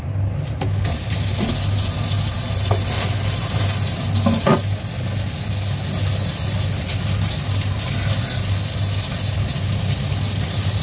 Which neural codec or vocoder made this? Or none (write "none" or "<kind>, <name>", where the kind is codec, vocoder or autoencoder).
none